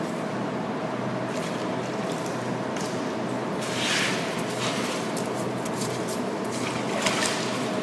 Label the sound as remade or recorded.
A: recorded